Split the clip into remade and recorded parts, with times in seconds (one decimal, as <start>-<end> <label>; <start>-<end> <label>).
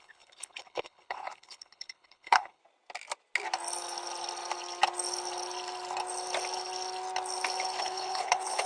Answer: 0.0-2.6 remade; 2.6-7.8 recorded; 7.8-8.7 remade